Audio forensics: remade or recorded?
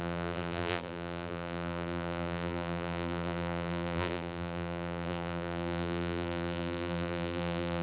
remade